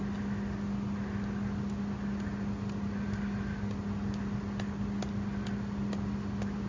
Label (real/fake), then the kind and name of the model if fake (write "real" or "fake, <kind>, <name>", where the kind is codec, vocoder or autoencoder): real